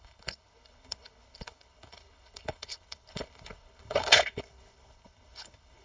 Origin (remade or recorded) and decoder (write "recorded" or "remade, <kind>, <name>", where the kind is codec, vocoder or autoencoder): remade, codec, HILCodec